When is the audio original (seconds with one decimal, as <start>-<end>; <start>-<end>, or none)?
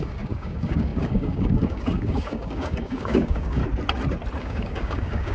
3.6-4.4